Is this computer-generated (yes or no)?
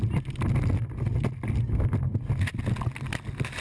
no